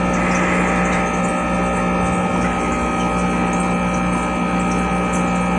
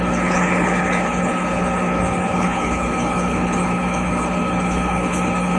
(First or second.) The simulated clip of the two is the second